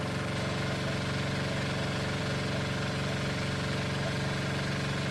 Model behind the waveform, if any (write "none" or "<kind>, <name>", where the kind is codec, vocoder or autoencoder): none